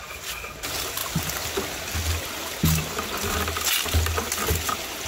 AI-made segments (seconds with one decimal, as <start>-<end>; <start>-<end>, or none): none

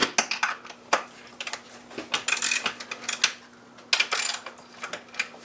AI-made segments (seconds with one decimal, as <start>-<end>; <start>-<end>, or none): none

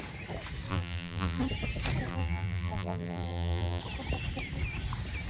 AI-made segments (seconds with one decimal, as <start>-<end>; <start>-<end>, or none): 0.7-1.4; 2.1-3.8

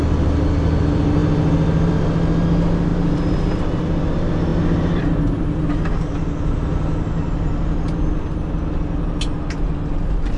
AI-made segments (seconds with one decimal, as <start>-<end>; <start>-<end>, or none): none

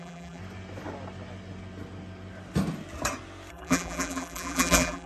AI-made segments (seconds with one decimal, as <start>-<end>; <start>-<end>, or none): 0.0-0.4; 3.5-5.1

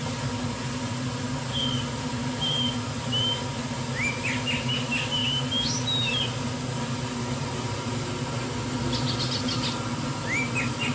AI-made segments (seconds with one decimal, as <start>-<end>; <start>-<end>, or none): none

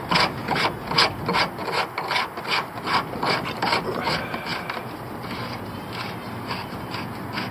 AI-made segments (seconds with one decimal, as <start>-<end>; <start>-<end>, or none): 0.0-0.4; 1.2-1.6; 2.9-7.5